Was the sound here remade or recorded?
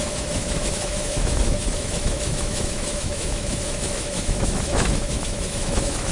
remade